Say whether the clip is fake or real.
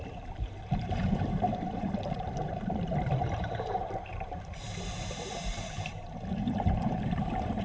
fake